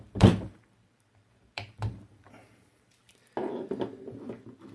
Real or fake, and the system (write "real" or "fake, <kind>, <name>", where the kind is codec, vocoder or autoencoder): fake, vocoder, BigVGAN v2